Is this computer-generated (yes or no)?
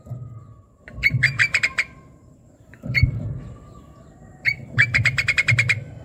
yes